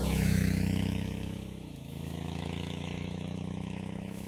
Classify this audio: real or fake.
fake